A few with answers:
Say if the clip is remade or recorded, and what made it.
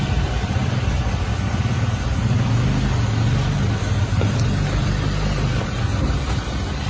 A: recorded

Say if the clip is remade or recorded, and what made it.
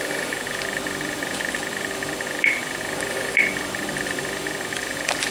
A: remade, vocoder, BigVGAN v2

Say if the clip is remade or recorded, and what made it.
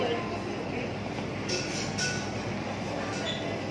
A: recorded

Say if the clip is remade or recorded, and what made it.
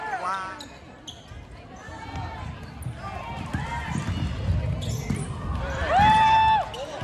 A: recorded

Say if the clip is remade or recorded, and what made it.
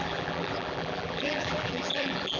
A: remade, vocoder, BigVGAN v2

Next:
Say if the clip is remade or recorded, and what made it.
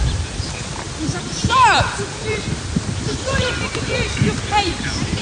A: recorded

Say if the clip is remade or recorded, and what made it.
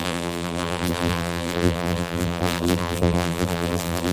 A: remade, vocoder, BigVGAN v2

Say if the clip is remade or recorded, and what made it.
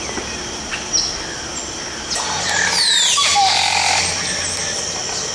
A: recorded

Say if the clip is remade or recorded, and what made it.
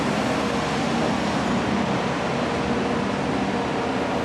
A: recorded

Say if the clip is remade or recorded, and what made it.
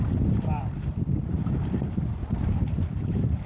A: remade, vocoder, BigVGAN v2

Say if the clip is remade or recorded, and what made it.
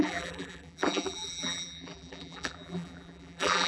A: remade, vocoder, BigVGAN v2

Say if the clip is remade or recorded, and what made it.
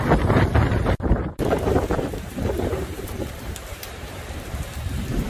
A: remade, vocoder, BigVGAN v2